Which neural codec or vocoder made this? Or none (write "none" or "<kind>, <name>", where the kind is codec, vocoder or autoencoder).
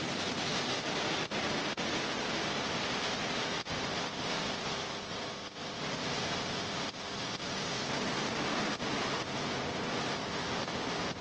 none